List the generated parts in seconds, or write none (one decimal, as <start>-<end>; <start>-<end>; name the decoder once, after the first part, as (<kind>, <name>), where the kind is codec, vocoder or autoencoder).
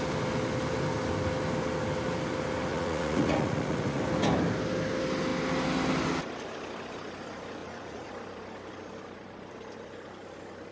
2.7-4.0 (vocoder, Vocos); 7.6-8.1